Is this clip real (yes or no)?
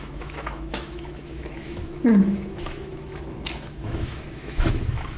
no